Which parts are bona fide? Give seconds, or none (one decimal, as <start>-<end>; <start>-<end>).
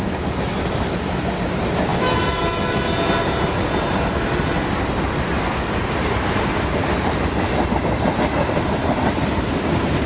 0.0-10.1